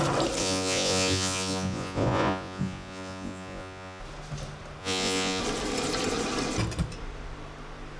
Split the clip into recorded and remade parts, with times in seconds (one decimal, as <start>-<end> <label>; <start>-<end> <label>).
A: 0.0-0.4 recorded; 0.4-4.0 remade; 4.0-4.8 recorded; 4.8-5.4 remade; 5.4-8.0 recorded